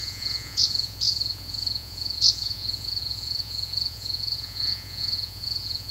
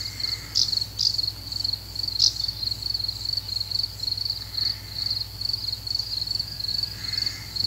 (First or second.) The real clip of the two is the second